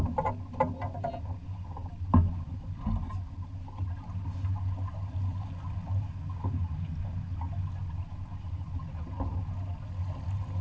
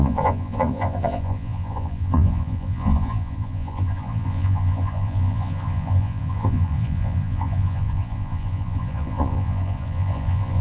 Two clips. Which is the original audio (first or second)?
first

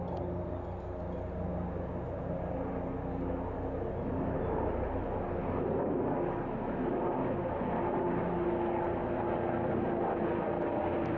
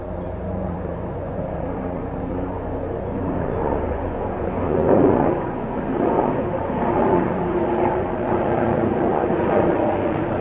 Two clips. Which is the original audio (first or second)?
first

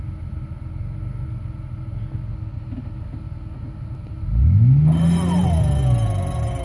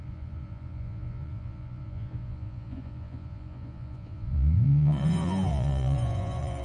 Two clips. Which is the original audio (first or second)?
first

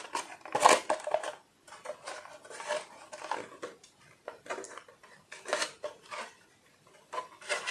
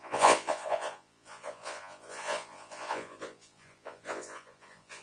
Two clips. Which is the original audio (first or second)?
first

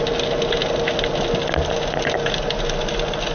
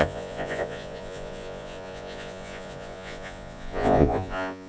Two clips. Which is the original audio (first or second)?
first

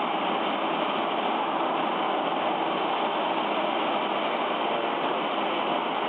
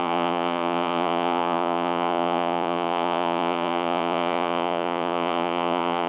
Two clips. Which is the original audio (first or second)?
first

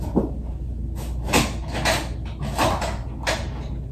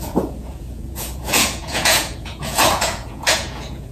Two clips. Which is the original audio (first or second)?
first